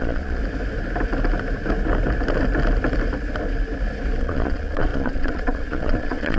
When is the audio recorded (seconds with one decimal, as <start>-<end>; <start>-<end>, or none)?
0.4-4.2